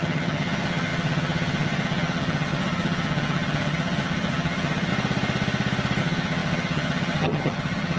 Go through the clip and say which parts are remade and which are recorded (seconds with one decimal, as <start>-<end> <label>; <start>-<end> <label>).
0.0-4.9 remade; 4.9-6.0 recorded; 6.0-8.0 remade